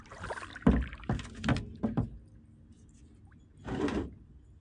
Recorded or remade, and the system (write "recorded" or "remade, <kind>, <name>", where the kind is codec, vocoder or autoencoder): recorded